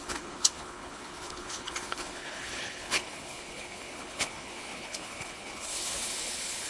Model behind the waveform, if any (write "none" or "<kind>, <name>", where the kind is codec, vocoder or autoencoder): codec, HILCodec